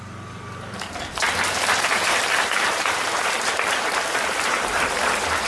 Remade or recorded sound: remade